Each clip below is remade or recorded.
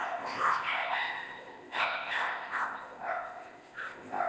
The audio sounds remade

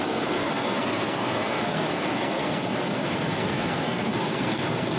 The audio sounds remade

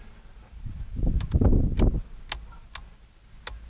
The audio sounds recorded